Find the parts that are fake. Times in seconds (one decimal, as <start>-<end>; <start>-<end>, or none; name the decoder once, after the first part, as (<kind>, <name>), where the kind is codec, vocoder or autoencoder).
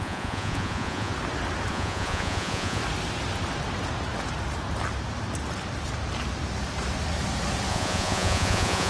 0.0-1.1 (vocoder, Vocos); 1.7-2.8; 7.7-8.9